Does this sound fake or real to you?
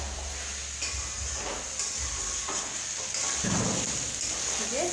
real